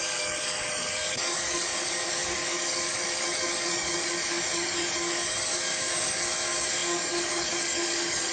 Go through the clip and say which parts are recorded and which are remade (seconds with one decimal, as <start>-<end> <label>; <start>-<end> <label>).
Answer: 0.0-8.3 remade